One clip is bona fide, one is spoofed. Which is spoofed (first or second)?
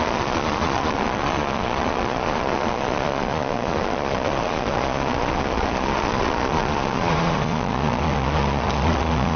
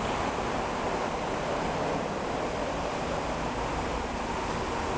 first